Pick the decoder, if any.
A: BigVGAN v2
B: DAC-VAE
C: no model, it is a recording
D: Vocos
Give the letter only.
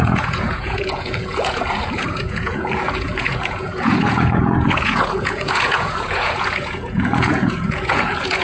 D